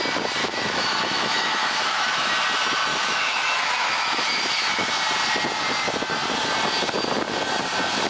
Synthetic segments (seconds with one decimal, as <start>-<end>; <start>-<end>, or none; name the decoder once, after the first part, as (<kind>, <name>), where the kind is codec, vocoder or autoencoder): 0.4-2.3 (autoencoder, DAC-VAE); 2.9-4.9